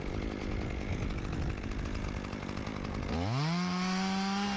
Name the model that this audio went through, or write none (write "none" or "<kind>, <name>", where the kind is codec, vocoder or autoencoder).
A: none